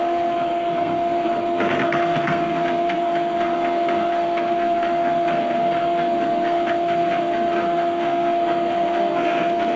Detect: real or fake fake